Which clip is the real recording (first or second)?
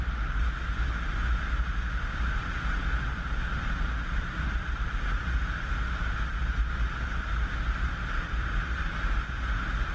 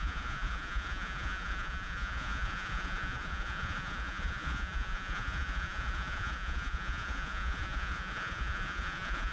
first